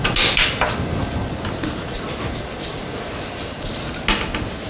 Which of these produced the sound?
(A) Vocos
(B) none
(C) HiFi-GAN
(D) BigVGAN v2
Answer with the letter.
B